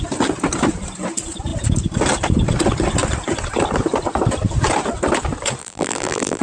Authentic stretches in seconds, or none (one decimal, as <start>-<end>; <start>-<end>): 0.0-5.6